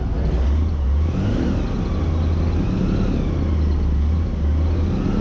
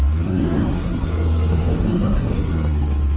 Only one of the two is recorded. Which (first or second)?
first